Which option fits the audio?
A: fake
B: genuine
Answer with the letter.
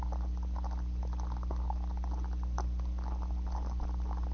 B